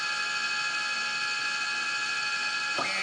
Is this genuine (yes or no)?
yes